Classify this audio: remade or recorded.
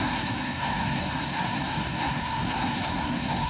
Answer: remade